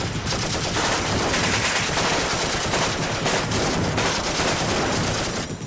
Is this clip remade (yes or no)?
no